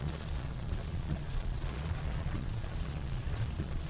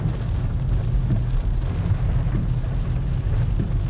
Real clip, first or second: second